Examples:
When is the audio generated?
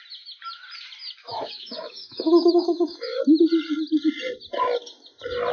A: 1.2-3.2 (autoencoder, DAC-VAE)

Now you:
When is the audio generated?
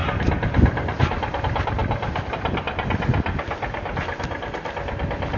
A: none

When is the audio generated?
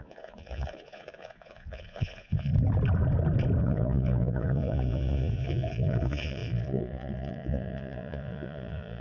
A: 0.0-2.5 (vocoder, Vocos); 3.6-9.0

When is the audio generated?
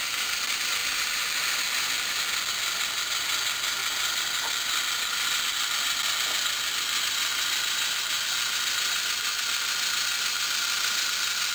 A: 0.8-3.1 (vocoder, BigVGAN v2); 3.8-5.8; 7.3-8.4